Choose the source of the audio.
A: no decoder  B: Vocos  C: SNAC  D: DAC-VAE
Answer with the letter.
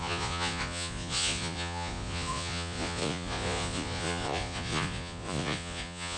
B